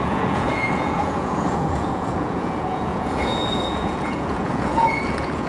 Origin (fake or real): fake